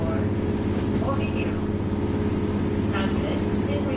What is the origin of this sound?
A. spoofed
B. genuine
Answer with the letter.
B